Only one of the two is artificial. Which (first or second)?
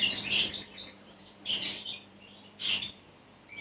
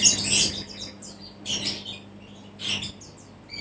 first